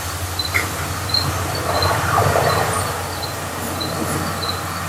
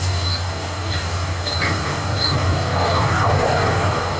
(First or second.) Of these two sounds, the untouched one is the first